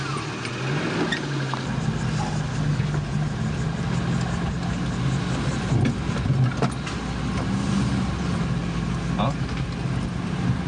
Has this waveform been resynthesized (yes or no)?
no